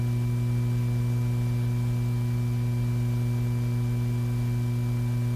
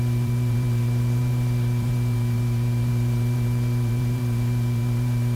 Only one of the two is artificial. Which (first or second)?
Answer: second